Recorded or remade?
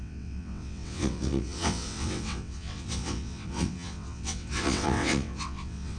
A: remade